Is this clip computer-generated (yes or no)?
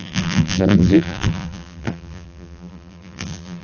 yes